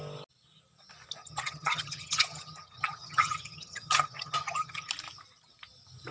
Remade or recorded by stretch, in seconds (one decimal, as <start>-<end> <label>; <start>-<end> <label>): 0.0-1.2 recorded; 1.2-4.9 remade; 4.9-6.1 recorded